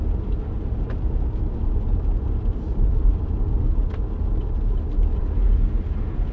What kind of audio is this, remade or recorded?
recorded